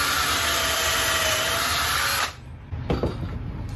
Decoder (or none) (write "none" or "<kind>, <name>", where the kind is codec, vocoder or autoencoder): none